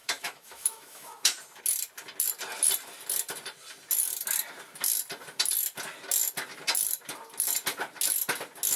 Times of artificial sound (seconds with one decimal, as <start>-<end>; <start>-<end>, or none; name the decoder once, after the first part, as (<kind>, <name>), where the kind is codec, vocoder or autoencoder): 0.0-1.6 (autoencoder, DAC-VAE)